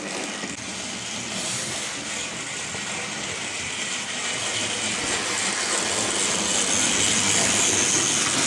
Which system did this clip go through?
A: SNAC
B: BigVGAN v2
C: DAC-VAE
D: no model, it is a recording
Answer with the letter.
D